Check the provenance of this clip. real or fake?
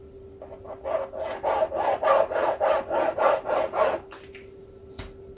real